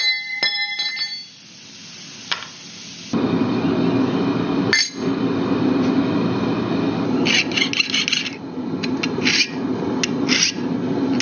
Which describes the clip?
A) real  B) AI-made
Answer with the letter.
A